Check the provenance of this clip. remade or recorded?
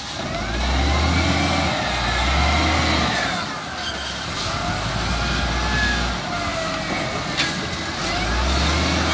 recorded